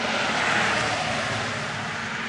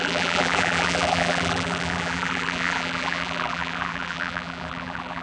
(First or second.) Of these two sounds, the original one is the first